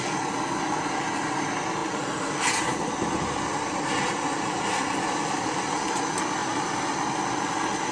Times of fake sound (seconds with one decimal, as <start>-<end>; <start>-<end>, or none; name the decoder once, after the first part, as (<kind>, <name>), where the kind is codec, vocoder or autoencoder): none